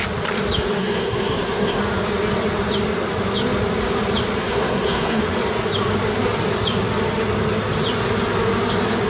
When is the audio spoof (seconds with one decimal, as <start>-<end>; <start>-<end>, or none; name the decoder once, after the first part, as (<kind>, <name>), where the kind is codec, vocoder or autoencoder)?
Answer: 0.8-1.8 (codec, SNAC); 4.4-5.2